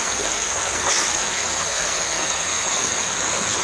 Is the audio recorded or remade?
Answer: remade